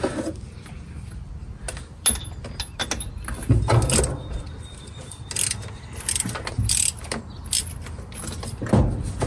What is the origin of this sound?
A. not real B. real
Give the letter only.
B